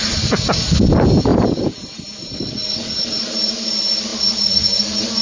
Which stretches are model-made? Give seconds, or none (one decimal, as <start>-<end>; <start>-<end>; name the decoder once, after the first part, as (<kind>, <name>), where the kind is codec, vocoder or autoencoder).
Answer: 0.0-0.6 (vocoder, BigVGAN v2); 1.3-2.3

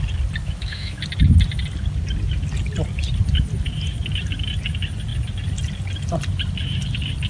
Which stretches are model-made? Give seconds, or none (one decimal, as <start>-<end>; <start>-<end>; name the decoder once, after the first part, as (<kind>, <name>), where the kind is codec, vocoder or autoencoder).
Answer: 0.4-1.0 (autoencoder, DAC-VAE)

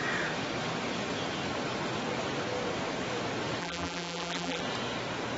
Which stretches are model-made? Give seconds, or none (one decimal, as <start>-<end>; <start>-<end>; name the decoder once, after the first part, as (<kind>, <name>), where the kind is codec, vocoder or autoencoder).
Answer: 3.6-4.6 (vocoder, BigVGAN v2)

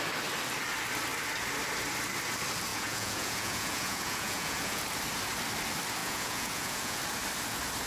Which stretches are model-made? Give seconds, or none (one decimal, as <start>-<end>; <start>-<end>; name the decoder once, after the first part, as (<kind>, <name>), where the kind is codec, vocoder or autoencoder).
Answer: 2.7-4.8 (vocoder, Vocos); 6.0-7.0

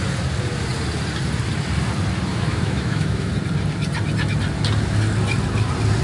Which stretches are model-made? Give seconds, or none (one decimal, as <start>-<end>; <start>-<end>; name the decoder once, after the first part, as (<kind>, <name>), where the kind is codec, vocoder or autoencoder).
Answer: 2.3-3.3 (autoencoder, DAC-VAE)